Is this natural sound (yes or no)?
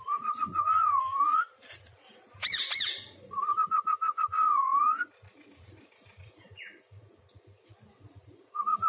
no